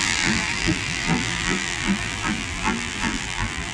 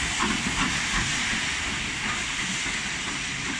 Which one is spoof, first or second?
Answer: first